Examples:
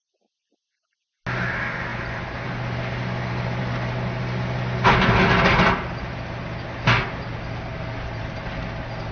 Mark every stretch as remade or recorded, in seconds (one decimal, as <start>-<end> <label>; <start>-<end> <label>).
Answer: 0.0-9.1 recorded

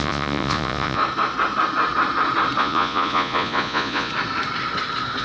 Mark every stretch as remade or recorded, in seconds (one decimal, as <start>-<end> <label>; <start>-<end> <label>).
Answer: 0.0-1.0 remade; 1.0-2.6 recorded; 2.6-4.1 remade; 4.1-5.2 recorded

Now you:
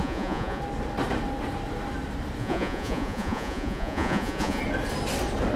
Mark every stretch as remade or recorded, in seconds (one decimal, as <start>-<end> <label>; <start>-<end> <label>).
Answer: 0.0-0.6 remade; 0.6-2.4 recorded; 2.4-4.6 remade; 4.6-5.6 recorded

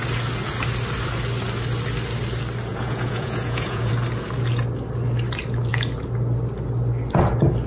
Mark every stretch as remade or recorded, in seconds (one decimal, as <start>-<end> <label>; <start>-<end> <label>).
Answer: 0.0-2.7 recorded; 2.7-3.9 remade; 3.9-7.7 recorded

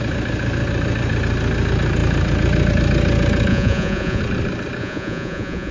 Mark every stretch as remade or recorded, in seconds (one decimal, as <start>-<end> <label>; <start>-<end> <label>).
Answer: 0.0-3.5 recorded; 3.5-4.2 remade; 4.2-4.8 recorded; 4.8-5.7 remade